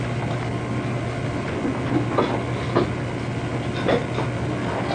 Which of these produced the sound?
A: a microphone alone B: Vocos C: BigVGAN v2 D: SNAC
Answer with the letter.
A